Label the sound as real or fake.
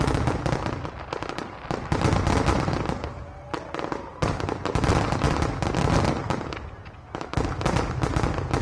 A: real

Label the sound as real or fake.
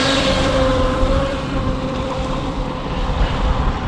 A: fake